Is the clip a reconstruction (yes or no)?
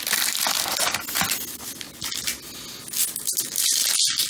no